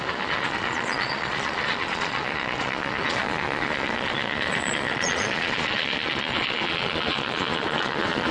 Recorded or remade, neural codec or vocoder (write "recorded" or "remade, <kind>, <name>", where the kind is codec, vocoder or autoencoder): remade, vocoder, Vocos